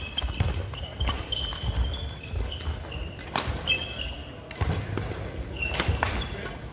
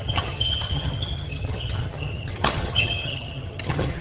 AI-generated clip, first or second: second